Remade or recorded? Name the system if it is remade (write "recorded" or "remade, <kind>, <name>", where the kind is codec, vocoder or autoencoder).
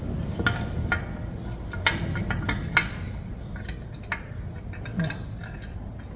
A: recorded